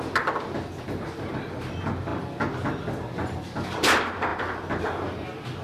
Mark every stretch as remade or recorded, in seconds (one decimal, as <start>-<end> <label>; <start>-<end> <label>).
0.0-5.6 recorded